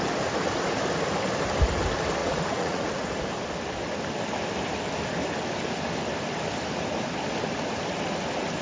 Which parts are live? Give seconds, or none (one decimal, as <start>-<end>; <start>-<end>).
0.0-2.2; 2.9-8.6